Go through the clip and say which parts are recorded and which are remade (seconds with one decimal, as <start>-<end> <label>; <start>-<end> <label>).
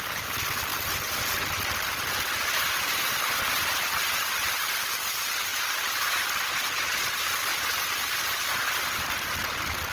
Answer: 0.0-9.9 recorded